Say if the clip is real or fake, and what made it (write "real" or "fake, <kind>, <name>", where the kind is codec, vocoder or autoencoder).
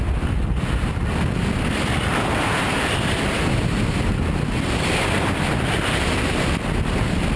fake, vocoder, BigVGAN v2